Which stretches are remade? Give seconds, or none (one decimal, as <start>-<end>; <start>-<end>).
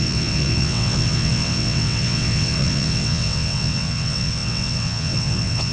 0.0-5.7